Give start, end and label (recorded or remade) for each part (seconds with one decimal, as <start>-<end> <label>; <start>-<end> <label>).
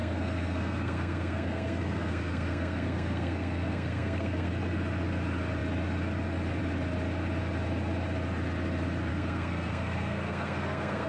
0.0-4.5 remade; 4.5-9.1 recorded; 9.1-11.1 remade